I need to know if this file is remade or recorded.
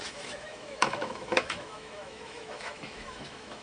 remade